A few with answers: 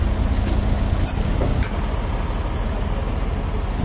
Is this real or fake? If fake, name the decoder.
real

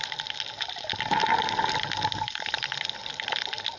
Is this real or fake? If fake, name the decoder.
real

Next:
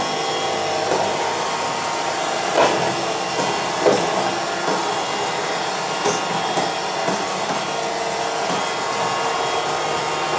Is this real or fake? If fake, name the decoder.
real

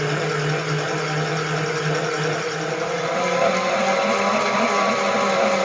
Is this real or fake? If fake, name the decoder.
real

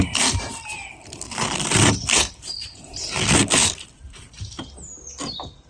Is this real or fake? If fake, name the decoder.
real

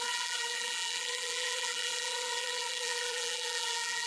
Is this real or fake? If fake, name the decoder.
fake, vocoder, BigVGAN v2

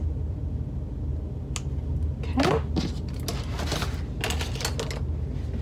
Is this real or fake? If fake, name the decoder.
real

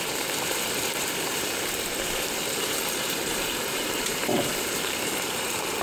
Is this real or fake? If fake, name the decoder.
fake, vocoder, BigVGAN v2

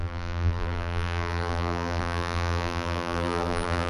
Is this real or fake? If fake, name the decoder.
fake, vocoder, BigVGAN v2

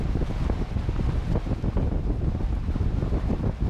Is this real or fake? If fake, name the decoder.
real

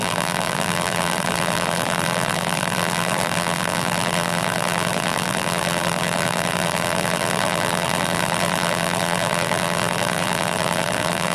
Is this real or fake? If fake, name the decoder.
fake, vocoder, BigVGAN v2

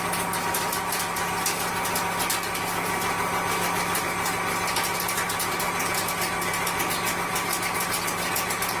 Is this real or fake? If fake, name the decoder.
real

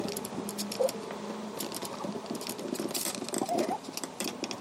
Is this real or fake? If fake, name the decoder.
real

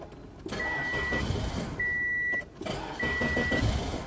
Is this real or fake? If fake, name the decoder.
real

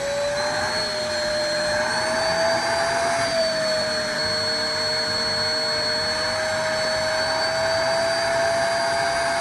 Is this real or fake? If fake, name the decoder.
real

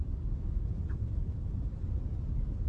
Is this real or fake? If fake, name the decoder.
real